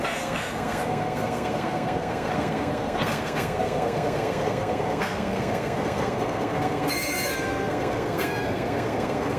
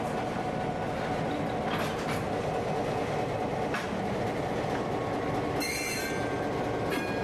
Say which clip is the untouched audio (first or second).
second